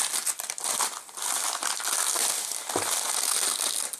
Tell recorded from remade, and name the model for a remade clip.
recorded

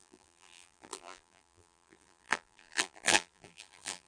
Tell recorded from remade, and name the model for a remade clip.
remade, vocoder, BigVGAN v2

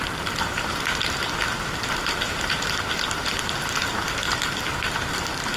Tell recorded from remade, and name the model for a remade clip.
remade, vocoder, BigVGAN v2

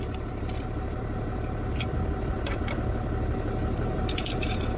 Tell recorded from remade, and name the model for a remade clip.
remade, vocoder, BigVGAN v2